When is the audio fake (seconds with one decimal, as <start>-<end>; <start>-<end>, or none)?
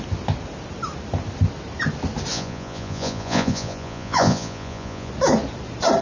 2.3-5.1